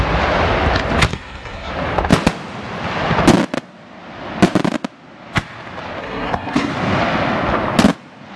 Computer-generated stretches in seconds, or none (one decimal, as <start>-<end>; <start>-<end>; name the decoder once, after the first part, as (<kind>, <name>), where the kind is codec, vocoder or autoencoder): 1.1-1.7 (codec, SNAC); 6.0-6.7